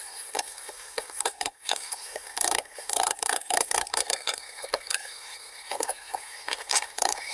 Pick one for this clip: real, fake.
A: fake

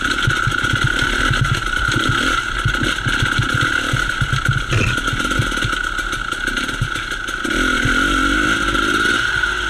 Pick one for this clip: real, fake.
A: real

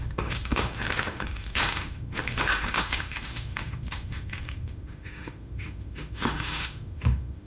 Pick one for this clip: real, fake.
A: fake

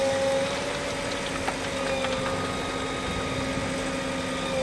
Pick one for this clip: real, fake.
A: real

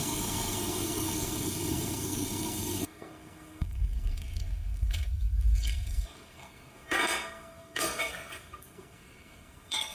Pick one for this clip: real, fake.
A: fake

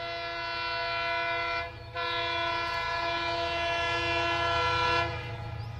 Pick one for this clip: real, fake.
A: real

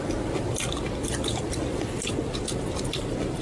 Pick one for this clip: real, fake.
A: real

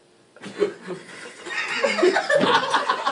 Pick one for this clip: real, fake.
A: fake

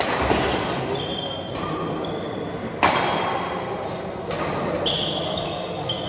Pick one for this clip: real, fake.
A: real